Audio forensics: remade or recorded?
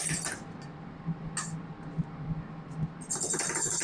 recorded